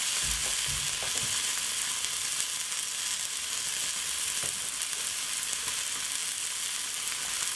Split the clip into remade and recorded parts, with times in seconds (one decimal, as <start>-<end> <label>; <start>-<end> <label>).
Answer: 0.0-7.6 recorded